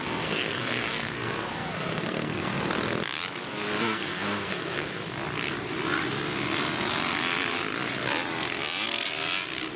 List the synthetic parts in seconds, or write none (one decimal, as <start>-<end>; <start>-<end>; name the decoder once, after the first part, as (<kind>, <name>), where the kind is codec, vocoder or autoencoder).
0.0-2.5 (codec, SNAC); 3.8-5.0